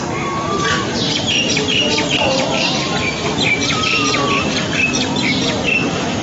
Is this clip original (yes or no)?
yes